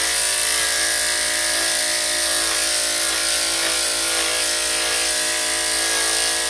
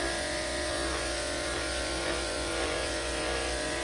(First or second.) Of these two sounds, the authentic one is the first